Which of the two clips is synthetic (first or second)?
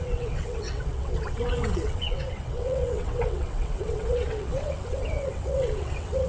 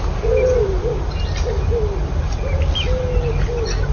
first